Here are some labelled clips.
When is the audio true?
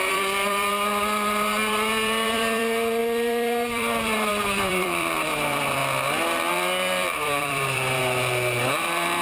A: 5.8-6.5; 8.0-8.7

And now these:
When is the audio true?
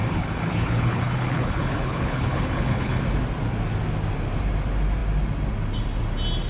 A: 3.0-6.5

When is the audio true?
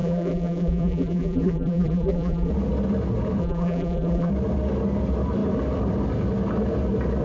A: 2.5-3.4; 4.3-7.2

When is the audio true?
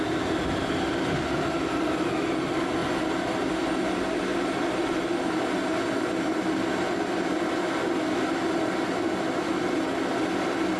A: 0.0-10.8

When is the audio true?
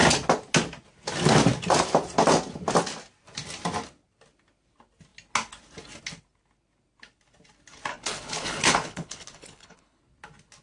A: 0.0-7.9; 10.0-10.6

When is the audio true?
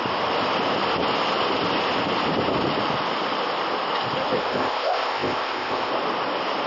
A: 0.0-4.4; 5.9-6.7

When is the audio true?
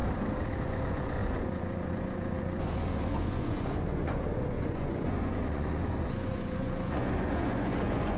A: 0.0-0.6